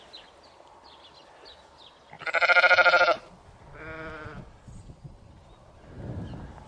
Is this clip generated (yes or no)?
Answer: no